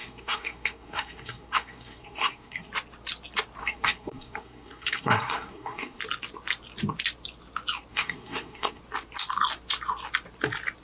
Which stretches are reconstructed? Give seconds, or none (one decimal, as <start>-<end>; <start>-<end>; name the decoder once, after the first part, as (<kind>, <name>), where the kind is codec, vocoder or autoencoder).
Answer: 0.0-2.7 (codec, SNAC); 3.6-6.0; 7.9-8.8